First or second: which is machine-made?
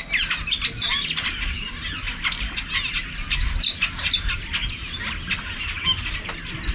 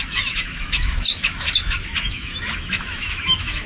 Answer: second